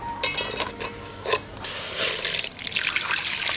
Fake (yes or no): no